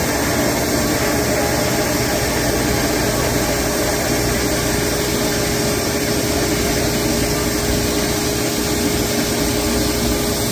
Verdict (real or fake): real